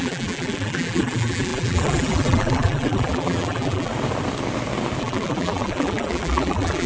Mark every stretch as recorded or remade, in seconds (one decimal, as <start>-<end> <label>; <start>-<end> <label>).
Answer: 0.0-3.9 remade; 3.9-5.0 recorded; 5.0-6.9 remade